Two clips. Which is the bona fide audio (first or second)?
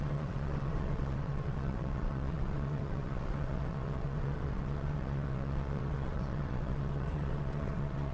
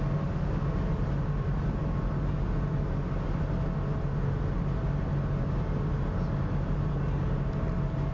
second